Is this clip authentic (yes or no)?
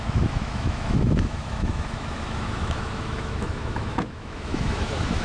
no